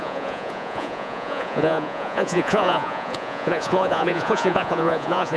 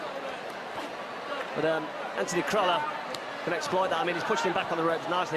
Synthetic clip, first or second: first